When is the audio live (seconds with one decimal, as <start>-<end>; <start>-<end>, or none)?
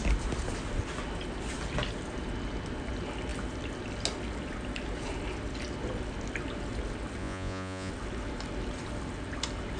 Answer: 0.0-7.2; 7.9-9.8